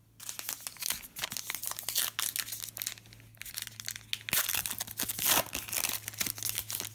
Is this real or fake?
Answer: real